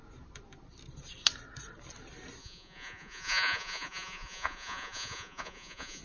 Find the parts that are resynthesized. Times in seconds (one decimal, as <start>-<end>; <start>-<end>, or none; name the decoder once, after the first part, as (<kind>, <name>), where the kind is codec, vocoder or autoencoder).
2.4-6.0 (vocoder, Vocos)